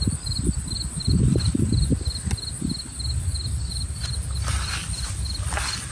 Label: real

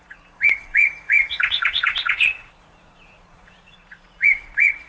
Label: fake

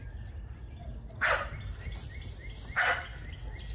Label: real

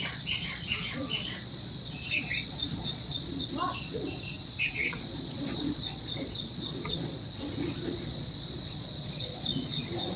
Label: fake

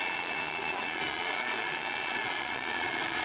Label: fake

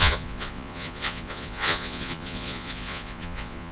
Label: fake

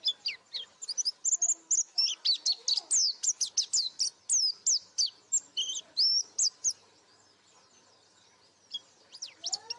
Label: real